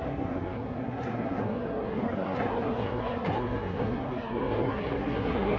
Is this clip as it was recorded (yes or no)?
no